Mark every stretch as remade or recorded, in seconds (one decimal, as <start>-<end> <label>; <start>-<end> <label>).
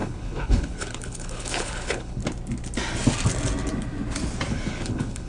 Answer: 0.0-2.2 remade; 2.2-4.5 recorded; 4.5-5.3 remade